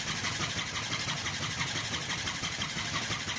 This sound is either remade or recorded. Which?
recorded